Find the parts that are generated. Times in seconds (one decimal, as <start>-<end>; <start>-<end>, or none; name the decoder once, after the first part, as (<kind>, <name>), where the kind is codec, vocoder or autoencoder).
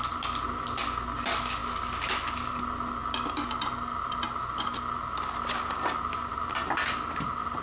none